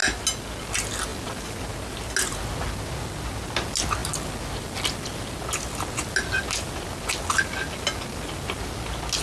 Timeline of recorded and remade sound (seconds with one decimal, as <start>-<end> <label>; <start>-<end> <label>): 0.0-9.2 recorded